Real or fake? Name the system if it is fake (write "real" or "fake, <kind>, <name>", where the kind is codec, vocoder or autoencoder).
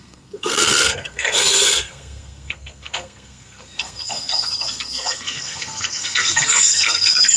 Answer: fake, codec, SNAC